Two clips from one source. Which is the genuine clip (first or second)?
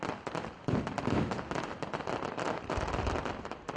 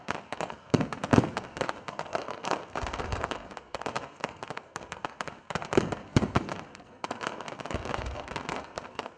first